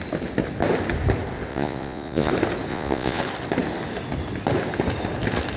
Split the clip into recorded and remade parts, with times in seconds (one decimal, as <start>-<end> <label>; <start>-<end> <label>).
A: 0.0-1.5 recorded; 1.5-2.3 remade; 2.3-2.7 recorded; 2.7-3.2 remade; 3.2-5.6 recorded